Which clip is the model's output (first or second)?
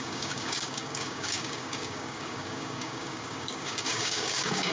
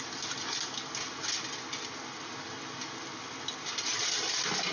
first